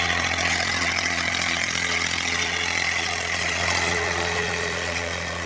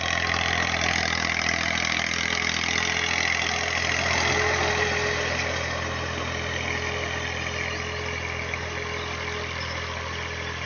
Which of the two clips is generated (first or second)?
first